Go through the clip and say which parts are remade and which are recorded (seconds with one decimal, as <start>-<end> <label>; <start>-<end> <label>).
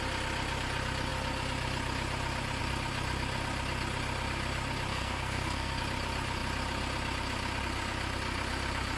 0.0-4.9 recorded; 4.9-5.8 remade; 5.8-9.0 recorded